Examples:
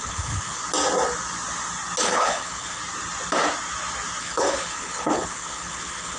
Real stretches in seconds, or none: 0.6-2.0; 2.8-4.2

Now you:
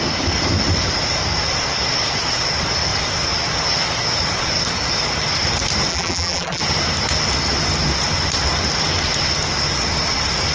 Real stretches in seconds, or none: 0.0-5.9; 6.6-10.5